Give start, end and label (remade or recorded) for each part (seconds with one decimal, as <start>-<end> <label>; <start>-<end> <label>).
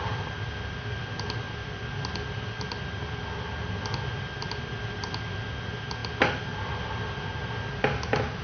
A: 0.0-8.4 recorded